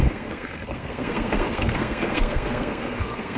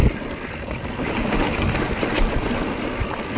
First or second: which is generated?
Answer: first